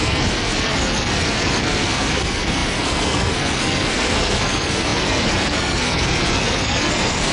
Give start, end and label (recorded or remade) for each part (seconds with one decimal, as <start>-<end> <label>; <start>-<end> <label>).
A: 0.0-7.3 remade